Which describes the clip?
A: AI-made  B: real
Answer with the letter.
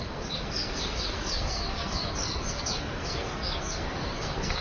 A